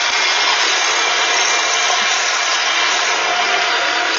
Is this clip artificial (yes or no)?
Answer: no